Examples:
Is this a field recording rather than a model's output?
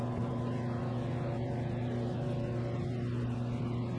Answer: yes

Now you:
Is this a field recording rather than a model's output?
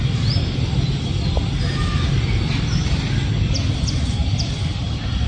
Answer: yes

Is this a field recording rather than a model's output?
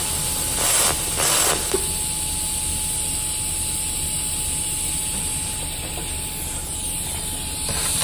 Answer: yes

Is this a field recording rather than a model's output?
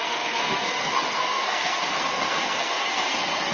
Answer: no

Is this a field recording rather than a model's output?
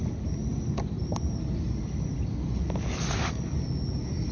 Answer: yes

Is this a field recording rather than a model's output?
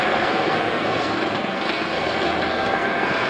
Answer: no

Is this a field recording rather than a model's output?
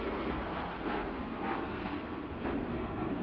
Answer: no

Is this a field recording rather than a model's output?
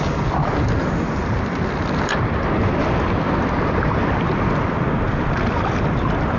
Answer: yes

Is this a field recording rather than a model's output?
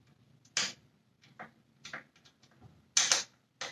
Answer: yes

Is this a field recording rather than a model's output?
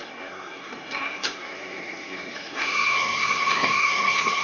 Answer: no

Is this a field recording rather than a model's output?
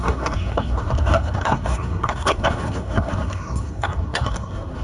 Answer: no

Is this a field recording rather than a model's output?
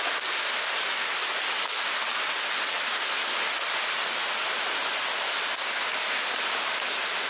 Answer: yes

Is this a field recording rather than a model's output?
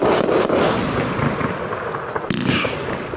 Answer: yes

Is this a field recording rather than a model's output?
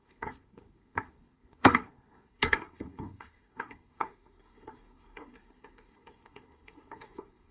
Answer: no